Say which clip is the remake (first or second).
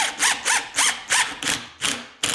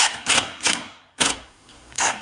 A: second